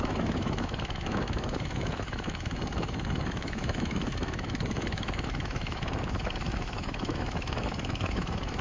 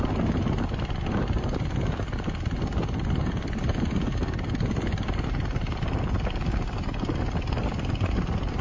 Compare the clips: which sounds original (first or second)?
second